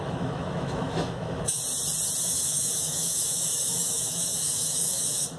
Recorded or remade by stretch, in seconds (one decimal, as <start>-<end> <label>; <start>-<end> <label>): 0.0-1.6 remade; 1.6-2.2 recorded; 2.2-5.4 remade